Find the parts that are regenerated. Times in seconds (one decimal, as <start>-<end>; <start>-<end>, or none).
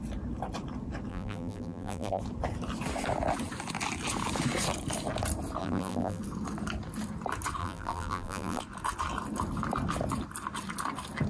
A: 1.1-2.2; 5.6-6.2; 7.6-8.6